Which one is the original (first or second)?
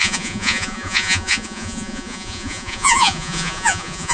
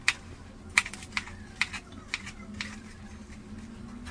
second